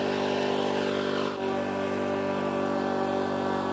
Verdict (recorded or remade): recorded